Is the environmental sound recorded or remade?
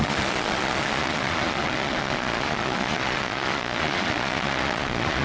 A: remade